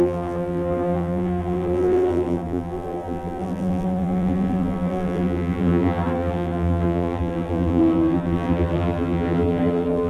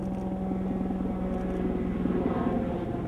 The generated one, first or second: first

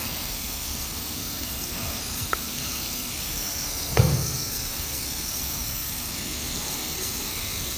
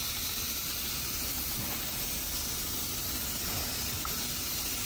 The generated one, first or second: first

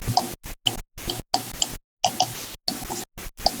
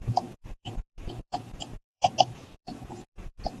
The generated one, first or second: second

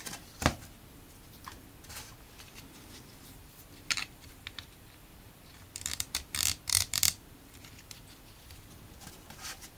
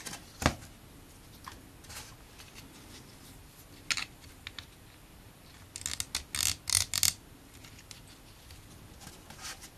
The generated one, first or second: first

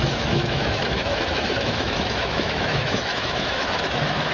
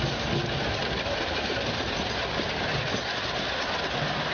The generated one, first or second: first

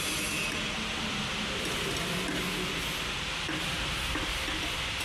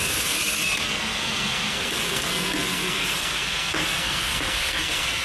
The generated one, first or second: second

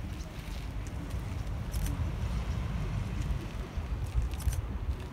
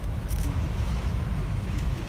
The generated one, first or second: second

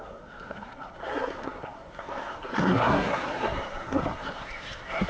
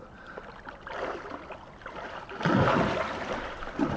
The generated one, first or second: first